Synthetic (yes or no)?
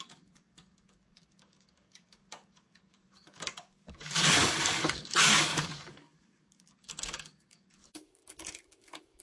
yes